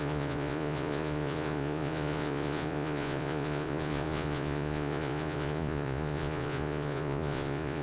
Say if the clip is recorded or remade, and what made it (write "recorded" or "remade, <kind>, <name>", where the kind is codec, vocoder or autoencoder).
remade, vocoder, Vocos